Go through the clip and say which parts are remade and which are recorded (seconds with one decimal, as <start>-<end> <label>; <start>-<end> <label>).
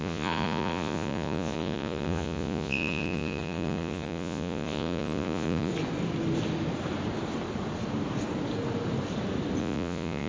0.0-5.7 remade; 5.7-9.6 recorded; 9.6-10.3 remade